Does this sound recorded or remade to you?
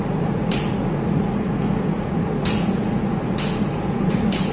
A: remade